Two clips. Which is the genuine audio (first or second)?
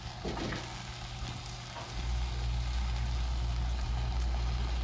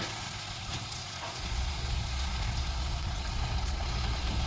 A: first